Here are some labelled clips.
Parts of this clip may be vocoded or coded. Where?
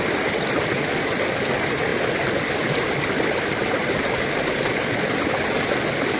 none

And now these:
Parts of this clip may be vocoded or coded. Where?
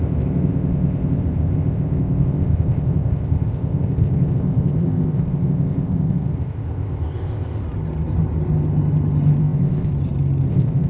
0.0-7.6 (codec, ZipCodec); 9.4-9.9; 10.5-10.9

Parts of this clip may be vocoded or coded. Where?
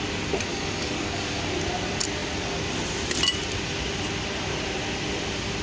0.5-1.4 (codec, DAC)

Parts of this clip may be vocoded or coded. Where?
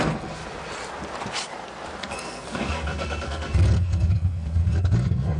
0.0-0.4 (codec, SNAC); 2.0-5.4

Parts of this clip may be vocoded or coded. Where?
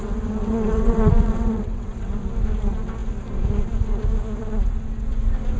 0.0-2.1 (vocoder, WaveNeXt)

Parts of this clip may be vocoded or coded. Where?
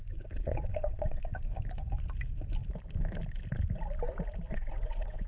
0.0-1.3 (vocoder, WaveNeXt); 4.5-5.3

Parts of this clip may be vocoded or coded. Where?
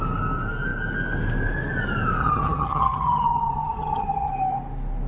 2.2-4.3 (vocoder, HiFi-GAN)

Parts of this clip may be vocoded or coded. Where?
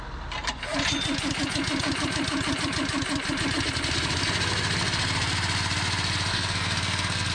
6.3-7.3 (codec, SNAC)